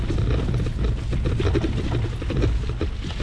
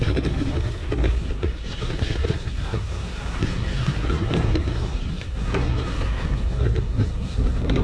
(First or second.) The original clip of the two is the first